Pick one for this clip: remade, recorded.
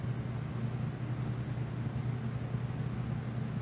recorded